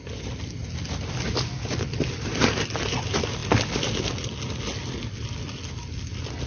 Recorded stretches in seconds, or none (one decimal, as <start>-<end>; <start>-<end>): 0.0-6.5